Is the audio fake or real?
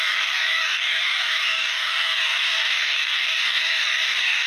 fake